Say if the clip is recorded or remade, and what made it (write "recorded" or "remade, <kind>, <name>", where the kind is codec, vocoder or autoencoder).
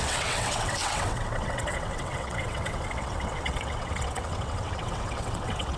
remade, vocoder, WaveNeXt